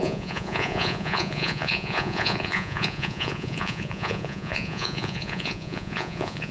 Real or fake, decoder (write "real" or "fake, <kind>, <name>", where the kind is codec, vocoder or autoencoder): fake, vocoder, Vocos